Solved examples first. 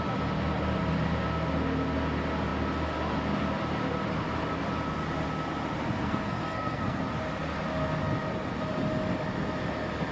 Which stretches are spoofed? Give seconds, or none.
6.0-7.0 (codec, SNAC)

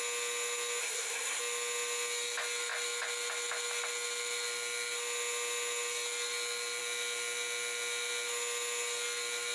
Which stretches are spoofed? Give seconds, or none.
0.8-1.4 (codec, SNAC)

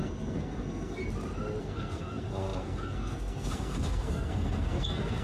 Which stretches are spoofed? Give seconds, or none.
0.0-1.0 (codec, SNAC); 1.6-5.2